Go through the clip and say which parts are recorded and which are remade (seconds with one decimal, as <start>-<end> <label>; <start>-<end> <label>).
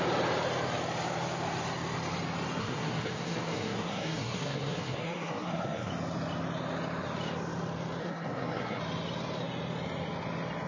0.0-2.6 recorded; 2.6-5.9 remade; 5.9-8.0 recorded; 8.0-8.8 remade; 8.8-10.7 recorded